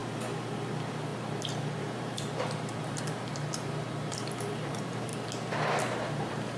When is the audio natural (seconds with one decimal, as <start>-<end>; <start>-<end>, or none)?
5.1-6.1